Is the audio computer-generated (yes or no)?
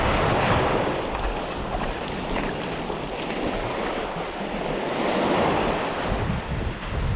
no